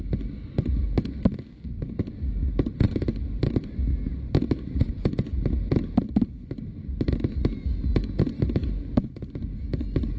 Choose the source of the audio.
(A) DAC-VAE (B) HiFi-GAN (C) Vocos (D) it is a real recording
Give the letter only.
D